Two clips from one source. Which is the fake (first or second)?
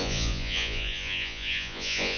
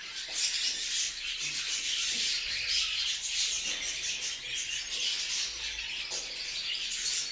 first